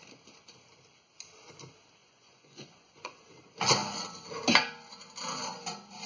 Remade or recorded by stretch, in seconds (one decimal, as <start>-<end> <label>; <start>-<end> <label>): 0.0-2.0 recorded; 2.0-3.3 remade; 3.3-6.1 recorded